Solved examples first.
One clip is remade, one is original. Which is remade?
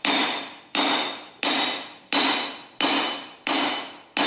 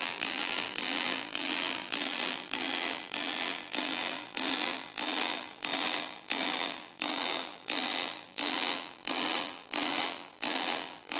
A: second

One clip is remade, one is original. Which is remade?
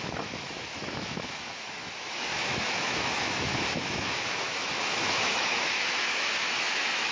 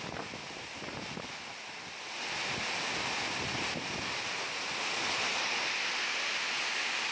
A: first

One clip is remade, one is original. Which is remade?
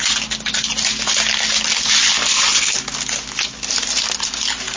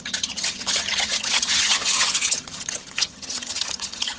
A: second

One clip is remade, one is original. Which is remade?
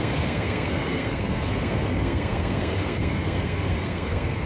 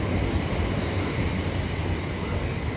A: first